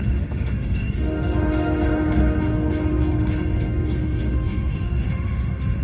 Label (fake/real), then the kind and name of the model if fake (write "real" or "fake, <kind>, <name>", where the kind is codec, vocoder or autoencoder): fake, autoencoder, DAC-VAE